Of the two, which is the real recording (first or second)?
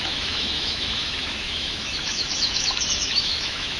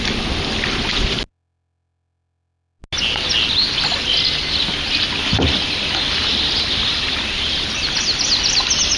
second